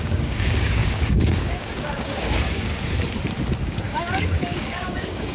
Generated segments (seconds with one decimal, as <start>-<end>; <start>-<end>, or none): 0.0-2.7; 3.6-5.3